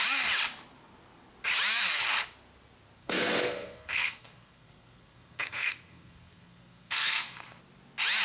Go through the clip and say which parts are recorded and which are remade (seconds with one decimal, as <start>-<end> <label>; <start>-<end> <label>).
0.0-3.0 recorded; 3.0-7.6 remade; 7.6-8.2 recorded